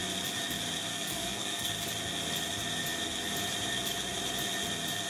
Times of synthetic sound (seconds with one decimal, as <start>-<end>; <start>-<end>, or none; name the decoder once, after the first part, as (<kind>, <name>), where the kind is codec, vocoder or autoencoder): 0.9-1.7 (codec, SNAC)